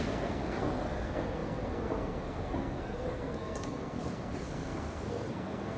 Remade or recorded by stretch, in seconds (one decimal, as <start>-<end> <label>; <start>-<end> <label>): 0.0-5.8 remade